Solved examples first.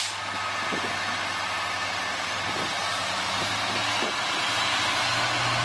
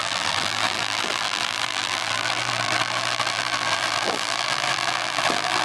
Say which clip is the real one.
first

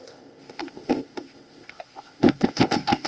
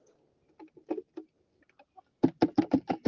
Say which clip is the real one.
second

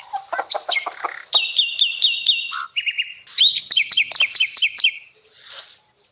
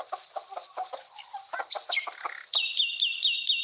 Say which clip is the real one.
first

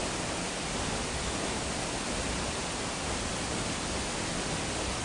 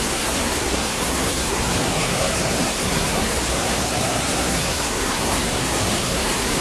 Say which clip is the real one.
first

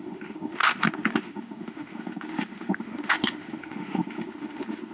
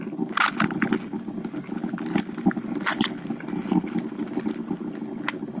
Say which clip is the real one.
second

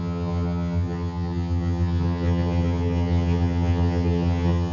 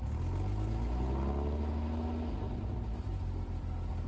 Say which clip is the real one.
second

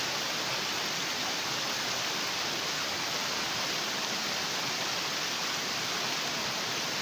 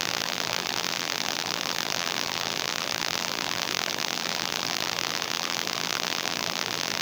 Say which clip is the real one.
first